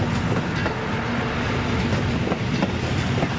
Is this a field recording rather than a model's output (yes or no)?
yes